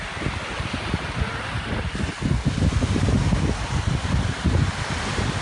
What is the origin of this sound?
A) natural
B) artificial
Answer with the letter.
A